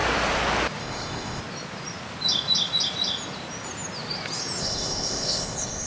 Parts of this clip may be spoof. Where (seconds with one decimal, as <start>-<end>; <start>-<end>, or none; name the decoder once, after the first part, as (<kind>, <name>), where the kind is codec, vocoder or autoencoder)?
0.8-1.4 (codec, ZipCodec); 4.6-5.9